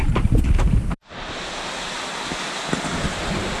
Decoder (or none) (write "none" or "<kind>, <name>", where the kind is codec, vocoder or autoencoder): none